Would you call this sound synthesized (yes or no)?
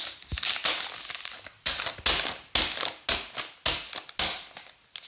no